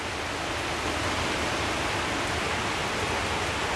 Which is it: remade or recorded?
recorded